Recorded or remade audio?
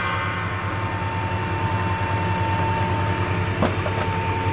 recorded